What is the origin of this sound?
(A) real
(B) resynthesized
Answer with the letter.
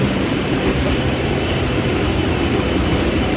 B